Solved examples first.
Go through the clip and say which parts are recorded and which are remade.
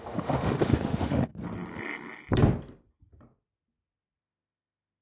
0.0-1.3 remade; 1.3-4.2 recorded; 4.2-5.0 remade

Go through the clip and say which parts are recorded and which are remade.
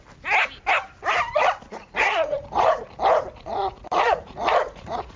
0.0-1.7 recorded; 1.7-2.9 remade; 2.9-3.5 recorded; 3.5-5.2 remade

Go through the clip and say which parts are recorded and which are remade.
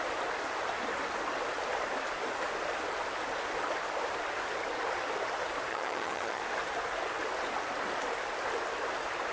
0.0-5.7 recorded; 5.7-6.4 remade; 6.4-9.3 recorded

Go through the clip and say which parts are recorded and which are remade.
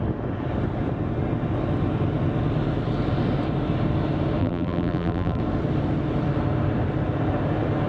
0.0-4.4 recorded; 4.4-5.4 remade; 5.4-7.9 recorded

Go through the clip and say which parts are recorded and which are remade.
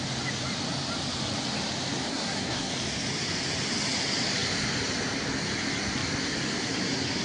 0.0-2.1 recorded; 2.1-2.7 remade; 2.7-7.2 recorded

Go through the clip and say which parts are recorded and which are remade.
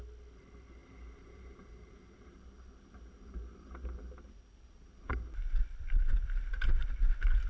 0.0-0.8 recorded; 0.8-5.3 remade; 5.3-7.5 recorded